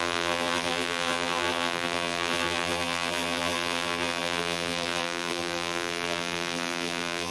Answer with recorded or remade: remade